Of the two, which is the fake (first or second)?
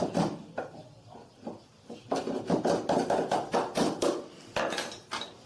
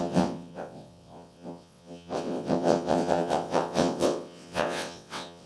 second